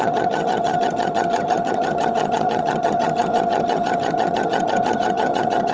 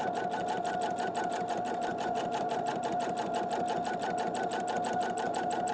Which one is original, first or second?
second